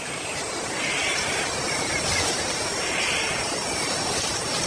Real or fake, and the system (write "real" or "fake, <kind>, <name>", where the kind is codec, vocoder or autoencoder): fake, vocoder, BigVGAN v2